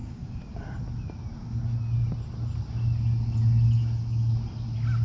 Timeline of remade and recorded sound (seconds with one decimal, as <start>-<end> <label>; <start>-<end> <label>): 0.0-0.6 remade; 0.6-5.0 recorded